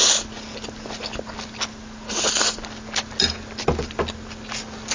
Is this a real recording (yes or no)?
yes